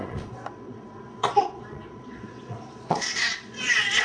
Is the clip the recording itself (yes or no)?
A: no